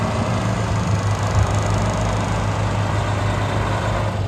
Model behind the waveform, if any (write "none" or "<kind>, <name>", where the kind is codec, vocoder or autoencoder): none